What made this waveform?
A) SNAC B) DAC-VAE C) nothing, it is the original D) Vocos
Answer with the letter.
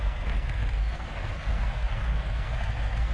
A